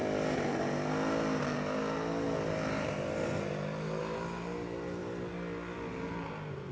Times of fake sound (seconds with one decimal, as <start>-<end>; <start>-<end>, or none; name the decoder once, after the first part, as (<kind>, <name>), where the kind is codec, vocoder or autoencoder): none